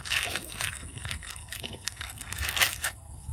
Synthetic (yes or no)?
yes